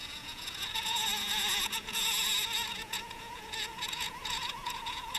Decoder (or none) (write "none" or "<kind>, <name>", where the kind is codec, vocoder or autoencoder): vocoder, Vocos